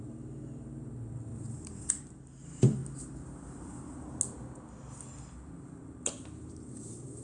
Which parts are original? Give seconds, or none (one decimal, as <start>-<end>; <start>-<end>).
2.8-6.4